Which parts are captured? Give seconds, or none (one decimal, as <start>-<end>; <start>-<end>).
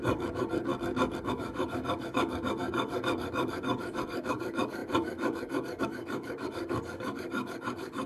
0.7-1.2